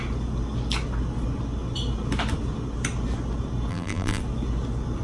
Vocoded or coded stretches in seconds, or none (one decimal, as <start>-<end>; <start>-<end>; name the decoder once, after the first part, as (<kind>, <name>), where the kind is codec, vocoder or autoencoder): 3.7-4.2 (vocoder, BigVGAN v2)